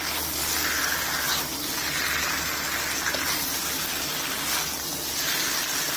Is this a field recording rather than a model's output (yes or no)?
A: yes